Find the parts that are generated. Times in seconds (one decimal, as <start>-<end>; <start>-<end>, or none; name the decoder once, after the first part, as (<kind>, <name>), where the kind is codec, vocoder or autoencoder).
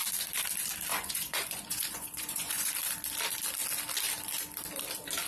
0.9-2.7 (vocoder, Vocos)